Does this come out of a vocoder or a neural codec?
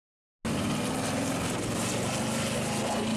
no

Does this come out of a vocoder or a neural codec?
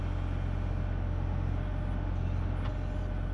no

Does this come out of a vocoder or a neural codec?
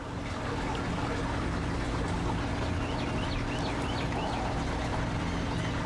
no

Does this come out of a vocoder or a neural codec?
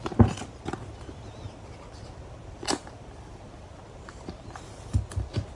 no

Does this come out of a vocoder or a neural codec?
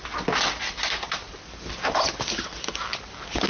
no